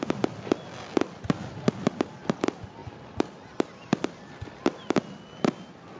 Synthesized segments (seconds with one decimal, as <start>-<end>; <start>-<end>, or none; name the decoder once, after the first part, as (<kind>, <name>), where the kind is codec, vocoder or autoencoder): none